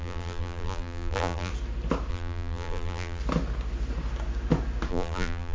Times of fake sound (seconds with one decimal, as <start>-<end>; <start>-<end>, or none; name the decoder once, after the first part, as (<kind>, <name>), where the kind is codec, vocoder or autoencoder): 0.0-1.5 (vocoder, BigVGAN v2); 2.1-3.2; 4.9-5.5